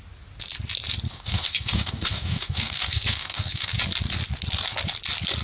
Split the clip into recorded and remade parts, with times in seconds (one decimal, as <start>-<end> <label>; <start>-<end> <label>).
0.0-1.1 recorded; 1.1-3.7 remade; 3.7-5.4 recorded